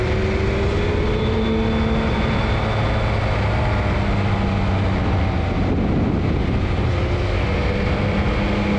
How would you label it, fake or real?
real